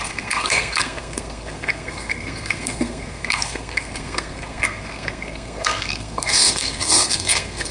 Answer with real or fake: fake